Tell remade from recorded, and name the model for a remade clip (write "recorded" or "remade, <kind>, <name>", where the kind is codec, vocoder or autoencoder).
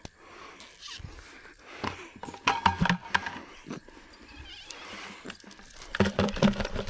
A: recorded